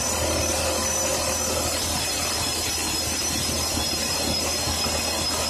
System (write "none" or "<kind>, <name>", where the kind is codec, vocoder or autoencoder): none